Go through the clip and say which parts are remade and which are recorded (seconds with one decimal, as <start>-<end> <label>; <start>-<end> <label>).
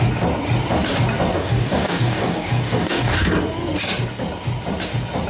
0.0-1.3 recorded; 1.3-3.3 remade; 3.3-5.3 recorded